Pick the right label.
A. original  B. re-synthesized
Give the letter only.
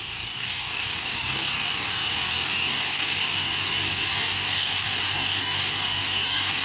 B